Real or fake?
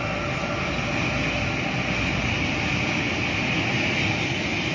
real